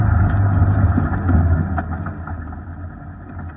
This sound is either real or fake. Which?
real